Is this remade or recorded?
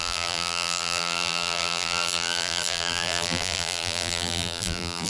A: remade